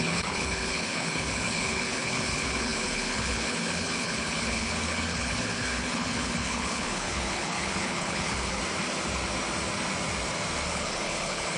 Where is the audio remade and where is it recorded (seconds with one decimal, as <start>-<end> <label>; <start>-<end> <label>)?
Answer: 0.0-8.6 remade; 8.6-10.7 recorded; 10.7-11.6 remade

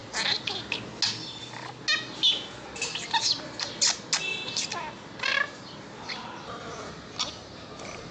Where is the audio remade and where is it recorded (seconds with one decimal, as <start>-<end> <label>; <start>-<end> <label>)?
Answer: 0.0-8.1 recorded

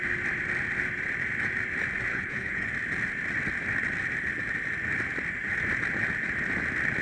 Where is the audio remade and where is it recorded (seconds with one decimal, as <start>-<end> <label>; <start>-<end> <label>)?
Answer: 0.0-2.1 recorded; 2.1-2.7 remade; 2.7-7.0 recorded